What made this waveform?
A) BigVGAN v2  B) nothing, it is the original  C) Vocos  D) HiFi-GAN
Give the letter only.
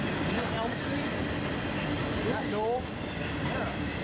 B